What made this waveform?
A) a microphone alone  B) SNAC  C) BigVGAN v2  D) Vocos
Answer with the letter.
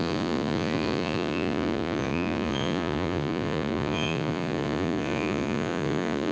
D